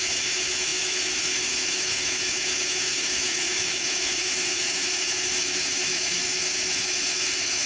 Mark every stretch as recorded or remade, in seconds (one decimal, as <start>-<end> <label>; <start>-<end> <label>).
0.0-7.7 remade